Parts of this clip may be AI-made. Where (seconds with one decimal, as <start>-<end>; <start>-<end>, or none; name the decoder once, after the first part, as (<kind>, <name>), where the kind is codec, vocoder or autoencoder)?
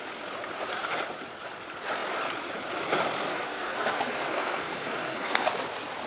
3.3-5.5 (codec, SNAC)